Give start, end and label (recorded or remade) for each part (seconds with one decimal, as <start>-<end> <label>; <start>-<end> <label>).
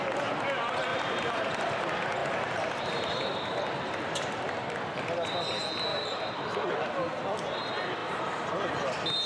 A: 0.0-0.9 recorded; 0.9-1.4 remade; 1.4-2.2 recorded; 2.2-3.6 remade; 3.6-5.9 recorded; 5.9-6.7 remade; 6.7-8.0 recorded; 8.0-8.7 remade; 8.7-9.3 recorded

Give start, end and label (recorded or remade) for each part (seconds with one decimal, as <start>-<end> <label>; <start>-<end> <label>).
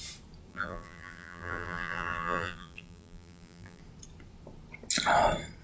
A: 0.0-0.5 recorded; 0.5-3.8 remade; 3.8-5.6 recorded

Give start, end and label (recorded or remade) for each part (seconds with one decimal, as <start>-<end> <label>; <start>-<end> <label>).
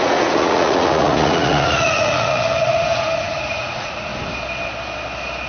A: 0.0-4.1 remade; 4.1-5.5 recorded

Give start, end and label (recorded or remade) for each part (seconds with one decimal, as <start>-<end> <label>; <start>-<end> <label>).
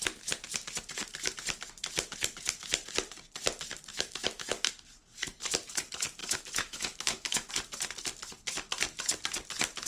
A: 0.0-3.9 recorded; 3.9-4.7 remade; 4.7-6.2 recorded; 6.2-7.5 remade; 7.5-9.9 recorded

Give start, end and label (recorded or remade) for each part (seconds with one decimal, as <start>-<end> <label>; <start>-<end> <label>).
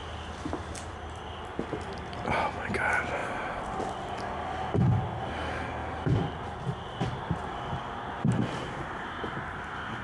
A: 0.0-10.0 recorded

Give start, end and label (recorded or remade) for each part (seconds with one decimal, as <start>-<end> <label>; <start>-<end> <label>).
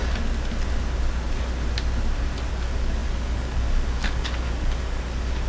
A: 0.0-2.5 recorded; 2.5-5.5 remade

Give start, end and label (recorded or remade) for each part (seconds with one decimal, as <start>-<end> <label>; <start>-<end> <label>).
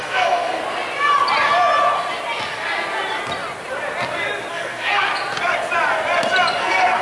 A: 0.0-0.6 remade; 0.6-4.5 recorded; 4.5-5.1 remade; 5.1-6.6 recorded; 6.6-7.0 remade